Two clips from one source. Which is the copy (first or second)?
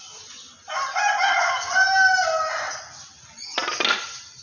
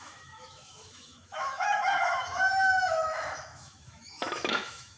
second